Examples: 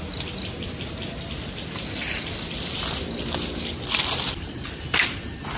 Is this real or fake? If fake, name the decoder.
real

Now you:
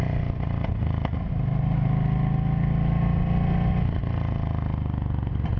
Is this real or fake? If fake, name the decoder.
real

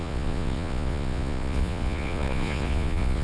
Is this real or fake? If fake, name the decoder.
fake, vocoder, Vocos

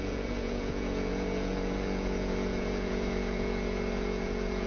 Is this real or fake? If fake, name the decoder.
fake, vocoder, Vocos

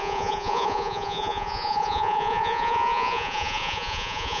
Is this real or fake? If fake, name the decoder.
fake, vocoder, Vocos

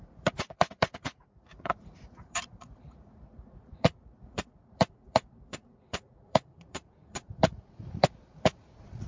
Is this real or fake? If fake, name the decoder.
fake, vocoder, Vocos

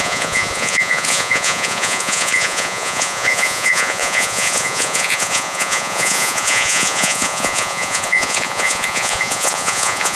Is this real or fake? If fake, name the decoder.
fake, vocoder, Vocos